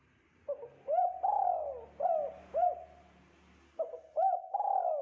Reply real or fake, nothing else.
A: real